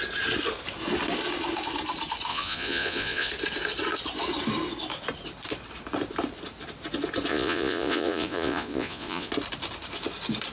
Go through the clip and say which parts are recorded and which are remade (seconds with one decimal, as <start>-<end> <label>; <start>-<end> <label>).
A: 0.0-2.3 recorded; 2.3-3.3 remade; 3.3-7.3 recorded; 7.3-9.3 remade; 9.3-10.5 recorded